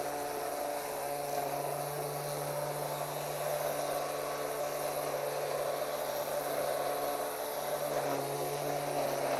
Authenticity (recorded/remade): recorded